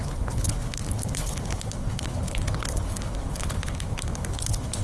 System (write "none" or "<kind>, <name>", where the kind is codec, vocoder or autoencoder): codec, HILCodec